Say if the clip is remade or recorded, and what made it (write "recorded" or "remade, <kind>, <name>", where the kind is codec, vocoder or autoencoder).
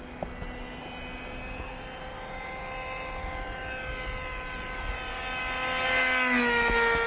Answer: recorded